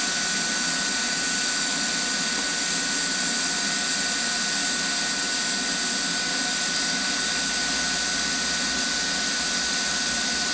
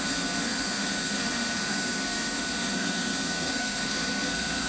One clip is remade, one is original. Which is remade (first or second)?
second